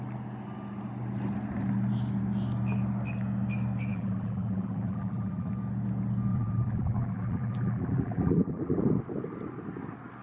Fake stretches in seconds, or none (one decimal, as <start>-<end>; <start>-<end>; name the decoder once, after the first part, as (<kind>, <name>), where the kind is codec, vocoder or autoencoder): 3.9-5.5 (vocoder, BigVGAN v2); 6.3-8.8